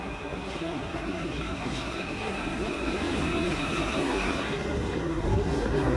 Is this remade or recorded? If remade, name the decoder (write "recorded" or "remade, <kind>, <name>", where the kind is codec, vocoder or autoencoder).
remade, codec, SNAC